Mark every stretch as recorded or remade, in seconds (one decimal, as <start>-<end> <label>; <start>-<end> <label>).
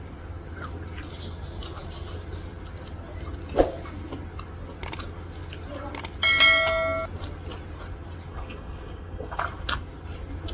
0.0-8.3 recorded; 8.3-9.4 remade; 9.4-10.5 recorded